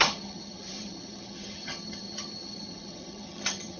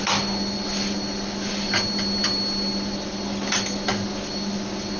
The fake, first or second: first